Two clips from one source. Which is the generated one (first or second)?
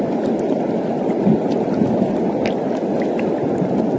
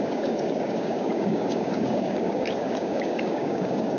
second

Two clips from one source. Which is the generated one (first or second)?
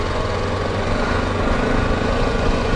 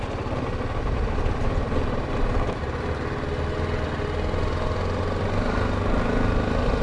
first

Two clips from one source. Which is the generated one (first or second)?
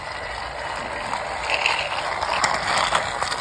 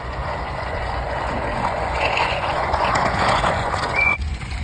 second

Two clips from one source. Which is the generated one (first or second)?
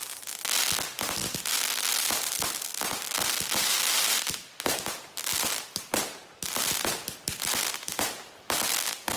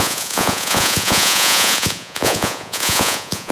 second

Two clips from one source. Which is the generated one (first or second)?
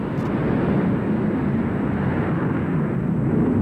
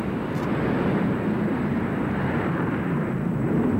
second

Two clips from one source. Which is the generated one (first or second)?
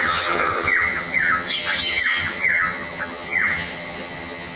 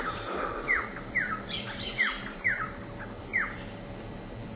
first